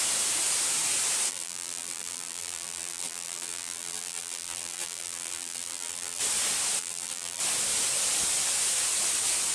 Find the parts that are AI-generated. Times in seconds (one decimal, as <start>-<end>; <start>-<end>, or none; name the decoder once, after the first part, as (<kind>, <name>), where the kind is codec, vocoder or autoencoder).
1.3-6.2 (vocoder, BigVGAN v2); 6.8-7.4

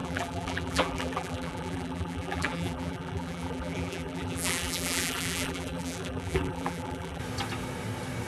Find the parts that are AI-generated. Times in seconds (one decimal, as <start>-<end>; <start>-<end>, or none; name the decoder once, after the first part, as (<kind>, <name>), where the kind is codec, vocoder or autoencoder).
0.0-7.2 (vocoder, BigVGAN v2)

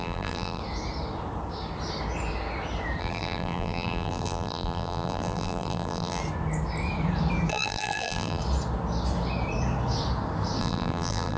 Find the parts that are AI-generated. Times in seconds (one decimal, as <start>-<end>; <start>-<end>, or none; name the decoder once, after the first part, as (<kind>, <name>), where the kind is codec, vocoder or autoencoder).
0.0-0.6 (vocoder, BigVGAN v2); 3.0-6.2; 7.5-8.4; 10.6-11.4

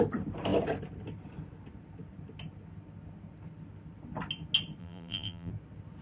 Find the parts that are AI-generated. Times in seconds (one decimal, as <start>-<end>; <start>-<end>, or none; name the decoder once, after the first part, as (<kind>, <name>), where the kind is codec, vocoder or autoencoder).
4.8-5.5 (vocoder, BigVGAN v2)

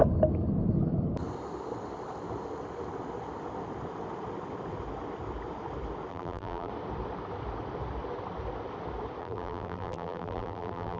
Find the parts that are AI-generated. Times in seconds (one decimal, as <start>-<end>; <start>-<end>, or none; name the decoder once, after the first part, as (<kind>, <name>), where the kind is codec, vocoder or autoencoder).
6.1-6.7 (vocoder, BigVGAN v2); 9.2-11.0

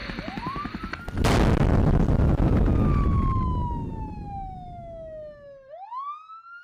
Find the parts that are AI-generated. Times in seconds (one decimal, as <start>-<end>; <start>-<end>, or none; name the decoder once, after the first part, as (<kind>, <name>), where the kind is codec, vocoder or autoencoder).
0.0-1.0 (vocoder, BigVGAN v2)

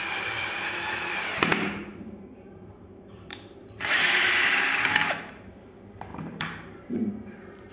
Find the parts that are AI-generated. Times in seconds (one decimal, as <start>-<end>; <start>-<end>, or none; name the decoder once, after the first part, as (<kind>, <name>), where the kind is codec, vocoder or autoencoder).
0.0-7.7 (vocoder, BigVGAN v2)